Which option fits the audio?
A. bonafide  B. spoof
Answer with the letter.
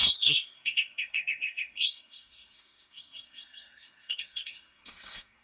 B